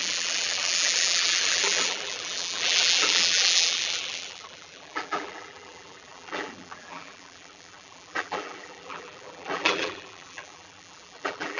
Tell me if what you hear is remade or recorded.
remade